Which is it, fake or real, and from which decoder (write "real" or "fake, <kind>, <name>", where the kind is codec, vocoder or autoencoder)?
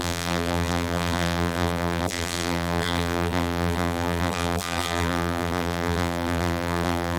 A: fake, vocoder, BigVGAN v2